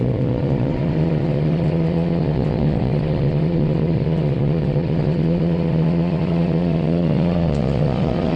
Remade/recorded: remade